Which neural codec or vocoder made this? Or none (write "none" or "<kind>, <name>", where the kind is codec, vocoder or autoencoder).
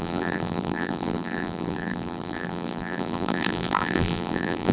vocoder, BigVGAN v2